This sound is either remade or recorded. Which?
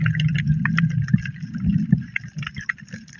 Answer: recorded